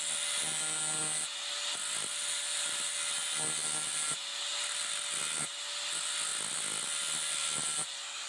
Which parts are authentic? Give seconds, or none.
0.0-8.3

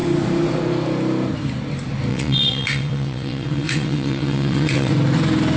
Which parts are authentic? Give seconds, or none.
0.0-2.1; 4.9-5.6

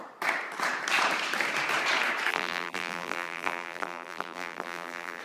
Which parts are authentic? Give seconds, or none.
0.0-2.3

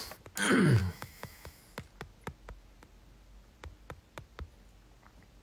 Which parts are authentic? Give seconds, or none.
0.0-0.8; 1.6-5.4

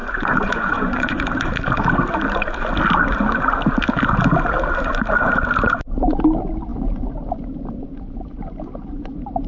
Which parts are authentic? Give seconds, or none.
1.2-9.5

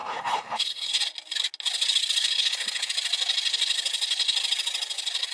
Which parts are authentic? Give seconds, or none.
1.0-2.2; 2.9-5.3

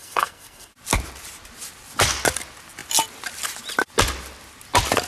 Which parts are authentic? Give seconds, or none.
0.7-5.1

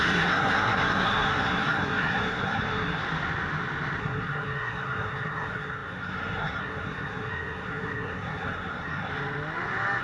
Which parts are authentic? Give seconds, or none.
3.0-4.0; 9.1-10.0